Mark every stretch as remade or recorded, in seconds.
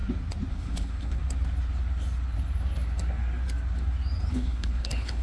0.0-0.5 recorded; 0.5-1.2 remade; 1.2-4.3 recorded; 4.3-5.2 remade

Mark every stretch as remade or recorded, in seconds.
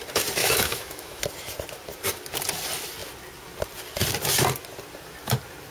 0.0-0.4 recorded; 0.4-1.2 remade; 1.2-5.7 recorded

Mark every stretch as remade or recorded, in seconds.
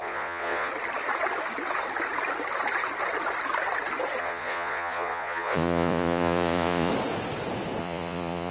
0.0-0.7 remade; 0.7-4.2 recorded; 4.2-6.9 remade; 6.9-7.8 recorded; 7.8-8.5 remade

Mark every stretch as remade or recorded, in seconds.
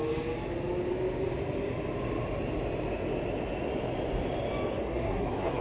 0.0-4.8 recorded; 4.8-5.6 remade